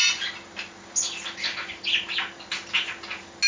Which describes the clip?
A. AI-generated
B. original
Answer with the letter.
B